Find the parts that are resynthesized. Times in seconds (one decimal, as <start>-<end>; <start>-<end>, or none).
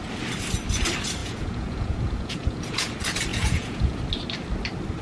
1.2-2.9; 3.3-4.0